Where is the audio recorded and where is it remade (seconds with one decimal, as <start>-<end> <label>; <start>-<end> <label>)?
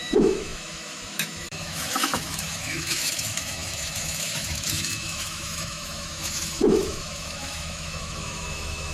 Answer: 0.0-8.9 remade